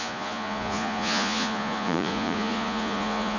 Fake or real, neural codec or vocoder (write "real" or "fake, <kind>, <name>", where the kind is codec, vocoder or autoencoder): fake, vocoder, Vocos